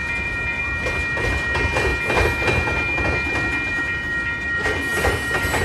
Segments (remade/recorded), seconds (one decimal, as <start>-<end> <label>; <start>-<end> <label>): 0.0-0.6 remade; 0.6-5.6 recorded